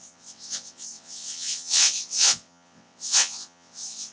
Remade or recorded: remade